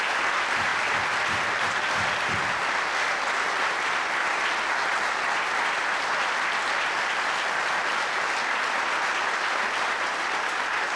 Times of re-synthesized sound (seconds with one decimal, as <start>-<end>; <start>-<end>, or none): none